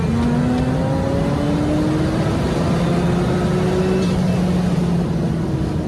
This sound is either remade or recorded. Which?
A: recorded